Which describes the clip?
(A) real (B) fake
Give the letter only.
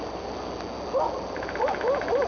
A